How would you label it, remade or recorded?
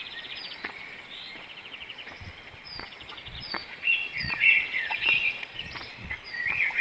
remade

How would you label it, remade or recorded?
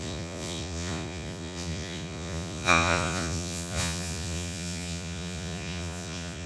remade